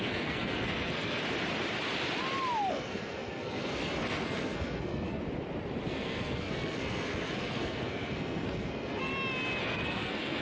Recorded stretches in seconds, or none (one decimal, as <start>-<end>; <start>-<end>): 1.2-2.7; 5.2-5.9; 9.1-9.6